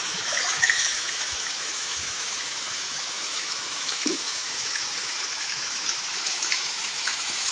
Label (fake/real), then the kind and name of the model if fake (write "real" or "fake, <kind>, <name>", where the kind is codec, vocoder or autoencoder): fake, autoencoder, DAC-VAE